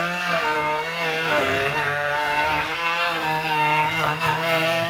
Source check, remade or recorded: remade